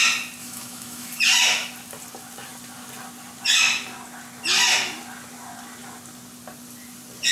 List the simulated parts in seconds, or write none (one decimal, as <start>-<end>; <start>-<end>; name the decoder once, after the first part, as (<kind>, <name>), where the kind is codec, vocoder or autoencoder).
0.4-1.2 (autoencoder, DAC-VAE)